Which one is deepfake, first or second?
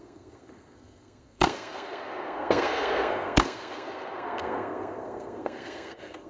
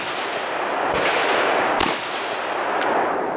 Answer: first